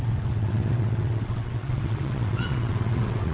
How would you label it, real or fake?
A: fake